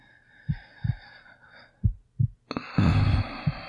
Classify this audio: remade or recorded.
recorded